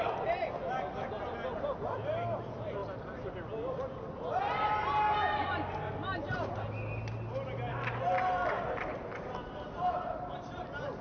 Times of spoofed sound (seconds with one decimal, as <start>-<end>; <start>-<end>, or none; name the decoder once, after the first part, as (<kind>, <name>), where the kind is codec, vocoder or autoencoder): none